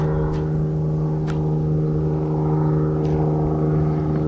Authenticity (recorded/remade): recorded